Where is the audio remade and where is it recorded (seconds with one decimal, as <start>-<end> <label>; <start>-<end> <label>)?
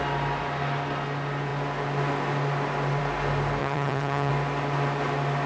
0.0-3.6 recorded; 3.6-4.3 remade; 4.3-5.5 recorded